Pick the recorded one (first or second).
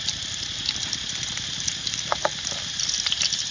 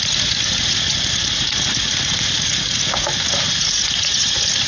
first